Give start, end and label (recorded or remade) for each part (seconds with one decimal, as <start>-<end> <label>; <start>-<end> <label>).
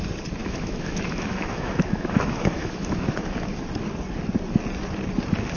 0.0-0.4 recorded; 0.4-3.6 remade; 3.6-5.6 recorded